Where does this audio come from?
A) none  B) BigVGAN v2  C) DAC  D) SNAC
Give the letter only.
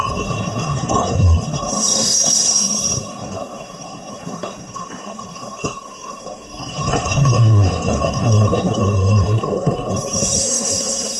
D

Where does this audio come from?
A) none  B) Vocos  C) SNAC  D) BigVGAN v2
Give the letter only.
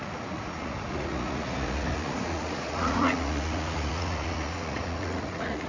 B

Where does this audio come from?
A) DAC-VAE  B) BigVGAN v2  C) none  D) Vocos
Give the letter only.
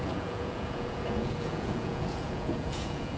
D